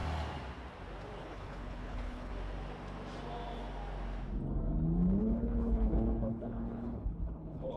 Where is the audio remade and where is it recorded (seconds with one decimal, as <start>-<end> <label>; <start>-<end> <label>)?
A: 0.0-1.2 recorded; 1.2-2.3 remade; 2.3-5.2 recorded; 5.2-7.8 remade